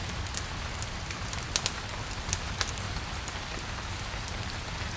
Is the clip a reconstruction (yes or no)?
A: no